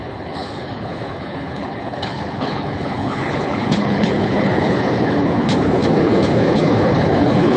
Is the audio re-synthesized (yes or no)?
yes